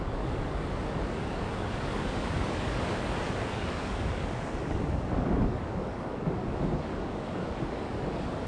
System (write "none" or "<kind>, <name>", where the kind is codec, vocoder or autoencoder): codec, DAC